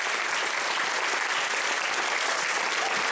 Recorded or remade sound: recorded